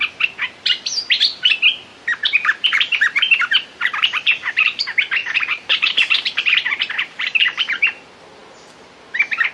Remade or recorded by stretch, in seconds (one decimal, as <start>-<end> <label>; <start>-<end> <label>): 0.0-1.9 recorded; 1.9-4.8 remade; 4.8-5.2 recorded; 5.2-8.0 remade; 8.0-9.5 recorded